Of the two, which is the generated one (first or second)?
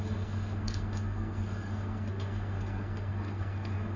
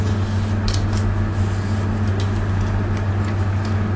first